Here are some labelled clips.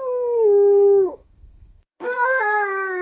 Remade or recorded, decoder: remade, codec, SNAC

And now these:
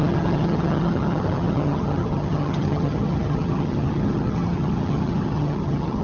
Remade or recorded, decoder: remade, vocoder, HiFi-GAN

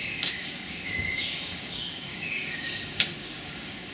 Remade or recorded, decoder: remade, codec, DAC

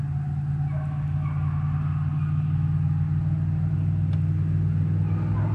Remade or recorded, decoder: recorded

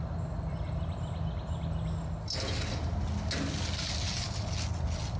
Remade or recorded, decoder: recorded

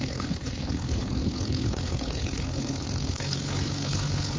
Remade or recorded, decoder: remade, codec, HILCodec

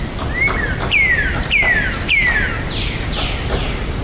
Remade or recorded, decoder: recorded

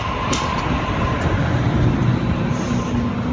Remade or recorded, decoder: recorded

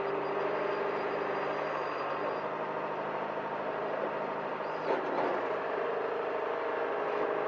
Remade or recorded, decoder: recorded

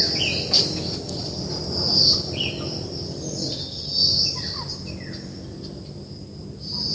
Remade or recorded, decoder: recorded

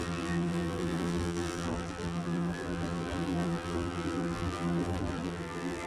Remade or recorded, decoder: remade, vocoder, BigVGAN v2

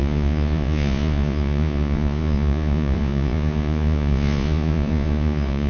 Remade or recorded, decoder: remade, vocoder, Vocos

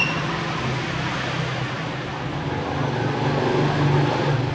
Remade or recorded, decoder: recorded